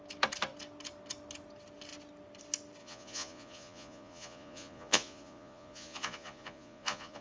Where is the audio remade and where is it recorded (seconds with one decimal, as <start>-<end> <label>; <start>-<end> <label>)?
0.0-2.8 recorded; 2.8-7.2 remade